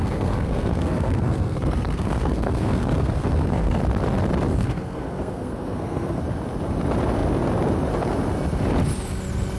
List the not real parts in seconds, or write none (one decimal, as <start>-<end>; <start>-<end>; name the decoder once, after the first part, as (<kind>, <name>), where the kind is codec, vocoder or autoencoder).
0.0-3.8 (codec, SNAC); 4.5-6.2